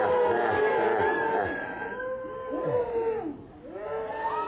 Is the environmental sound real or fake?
real